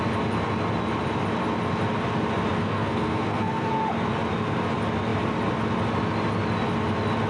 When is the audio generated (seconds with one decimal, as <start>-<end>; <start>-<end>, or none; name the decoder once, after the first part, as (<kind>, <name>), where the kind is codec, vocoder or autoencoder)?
2.6-3.7 (codec, SNAC)